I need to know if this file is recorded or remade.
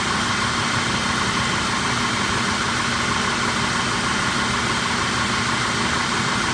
recorded